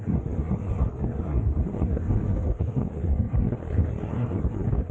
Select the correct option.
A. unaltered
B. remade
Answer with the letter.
B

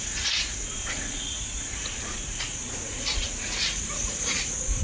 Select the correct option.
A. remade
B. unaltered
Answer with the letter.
A